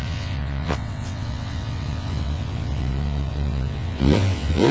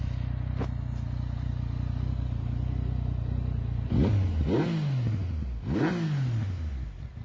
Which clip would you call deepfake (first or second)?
first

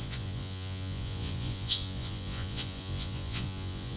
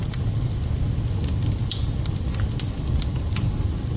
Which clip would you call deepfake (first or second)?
first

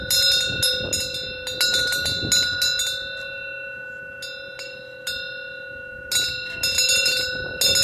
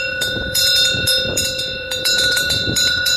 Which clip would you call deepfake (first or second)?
second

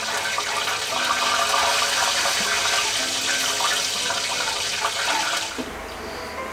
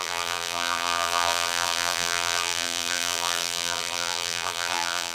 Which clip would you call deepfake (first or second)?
second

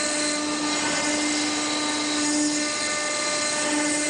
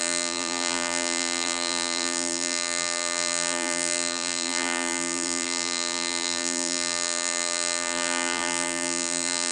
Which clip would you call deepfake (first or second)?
second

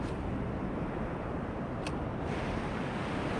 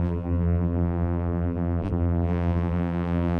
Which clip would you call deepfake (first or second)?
second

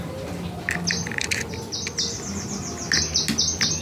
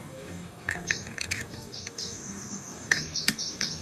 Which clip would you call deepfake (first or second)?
second